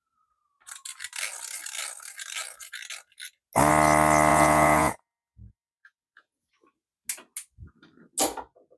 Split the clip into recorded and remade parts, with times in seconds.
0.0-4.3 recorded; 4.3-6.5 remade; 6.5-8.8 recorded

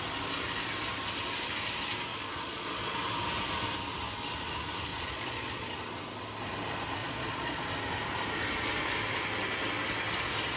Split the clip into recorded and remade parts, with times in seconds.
0.0-2.1 recorded; 2.1-3.0 remade; 3.0-4.9 recorded; 4.9-5.7 remade; 5.7-7.0 recorded; 7.0-7.7 remade; 7.7-10.6 recorded

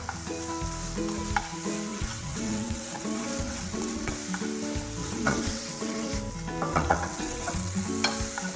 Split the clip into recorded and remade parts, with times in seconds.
0.0-1.9 recorded; 1.9-4.1 remade; 4.1-5.0 recorded; 5.0-6.1 remade; 6.1-6.7 recorded; 6.7-7.8 remade; 7.8-8.6 recorded

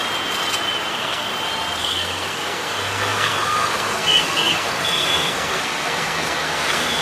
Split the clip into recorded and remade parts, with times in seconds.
0.0-0.9 recorded; 0.9-1.3 remade; 1.3-1.8 recorded; 1.8-7.0 remade

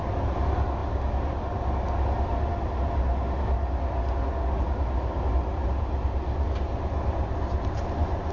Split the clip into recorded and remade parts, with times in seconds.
0.0-8.3 recorded

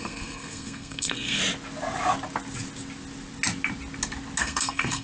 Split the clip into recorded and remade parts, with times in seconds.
0.0-1.4 remade; 1.4-4.4 recorded; 4.4-5.0 remade

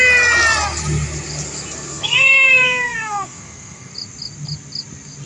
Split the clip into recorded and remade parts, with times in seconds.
0.0-1.9 recorded; 1.9-3.9 remade; 3.9-5.3 recorded

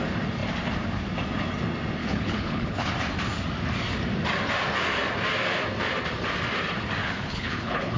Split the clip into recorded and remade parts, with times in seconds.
0.0-2.0 recorded; 2.0-2.9 remade; 2.9-7.0 recorded; 7.0-8.0 remade